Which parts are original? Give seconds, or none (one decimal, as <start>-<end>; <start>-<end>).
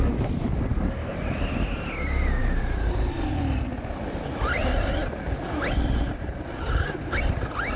0.0-0.7; 1.4-2.4; 3.4-4.6; 7.1-7.8